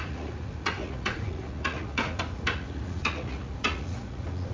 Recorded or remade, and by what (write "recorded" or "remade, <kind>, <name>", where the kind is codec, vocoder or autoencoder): remade, vocoder, Vocos